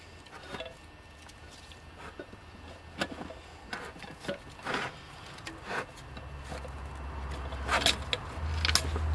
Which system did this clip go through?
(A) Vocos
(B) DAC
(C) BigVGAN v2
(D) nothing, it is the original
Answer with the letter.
D